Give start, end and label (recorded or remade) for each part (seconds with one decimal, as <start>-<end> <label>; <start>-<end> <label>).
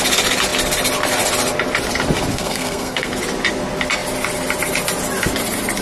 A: 0.0-2.3 recorded; 2.3-3.1 remade; 3.1-5.8 recorded